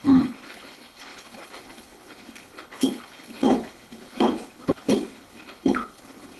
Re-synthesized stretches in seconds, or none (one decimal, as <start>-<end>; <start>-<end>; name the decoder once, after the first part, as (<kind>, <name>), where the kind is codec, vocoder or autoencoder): 0.0-6.4 (codec, HILCodec)